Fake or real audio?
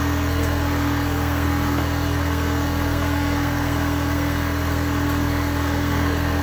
fake